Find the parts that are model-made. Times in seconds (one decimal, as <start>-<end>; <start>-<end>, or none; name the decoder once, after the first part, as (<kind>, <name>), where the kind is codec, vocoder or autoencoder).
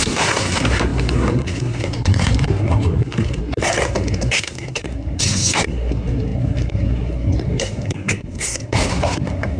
0.0-9.6 (codec, SNAC)